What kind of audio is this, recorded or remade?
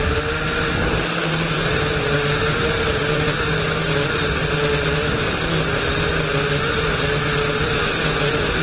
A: recorded